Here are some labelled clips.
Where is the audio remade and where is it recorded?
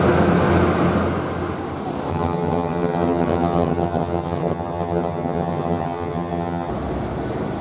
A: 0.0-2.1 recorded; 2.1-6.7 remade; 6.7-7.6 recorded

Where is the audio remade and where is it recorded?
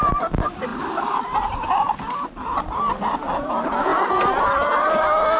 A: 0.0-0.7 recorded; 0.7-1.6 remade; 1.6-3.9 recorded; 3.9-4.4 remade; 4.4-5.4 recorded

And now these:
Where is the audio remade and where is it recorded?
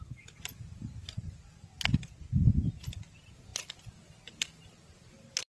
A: 0.0-5.6 recorded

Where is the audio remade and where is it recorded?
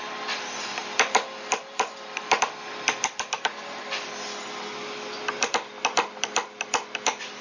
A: 0.0-7.4 recorded